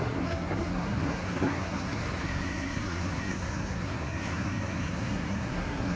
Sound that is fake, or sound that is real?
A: fake